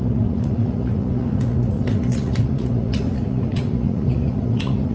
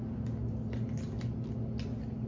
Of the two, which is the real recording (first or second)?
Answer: second